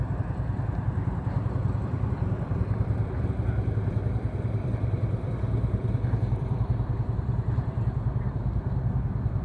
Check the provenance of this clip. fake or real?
fake